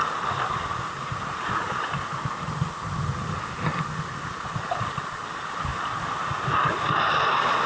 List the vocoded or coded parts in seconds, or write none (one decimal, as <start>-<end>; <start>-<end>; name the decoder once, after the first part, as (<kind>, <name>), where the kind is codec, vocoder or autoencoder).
0.7-1.9 (vocoder, Vocos)